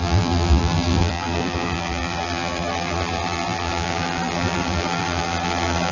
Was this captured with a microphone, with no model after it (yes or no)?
no